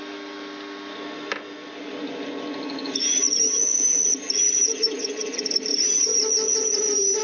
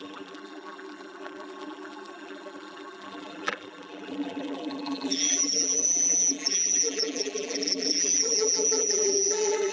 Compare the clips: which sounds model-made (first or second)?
second